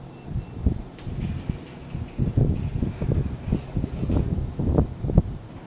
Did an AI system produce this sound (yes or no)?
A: no